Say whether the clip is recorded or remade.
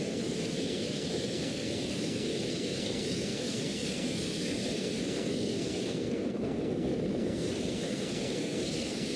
remade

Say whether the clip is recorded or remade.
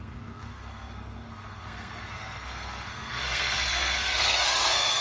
remade